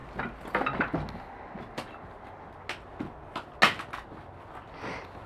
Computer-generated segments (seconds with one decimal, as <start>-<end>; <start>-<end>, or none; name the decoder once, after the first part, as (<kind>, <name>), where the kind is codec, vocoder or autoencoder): none